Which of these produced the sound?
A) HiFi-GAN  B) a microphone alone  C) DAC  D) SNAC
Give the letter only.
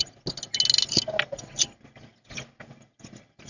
B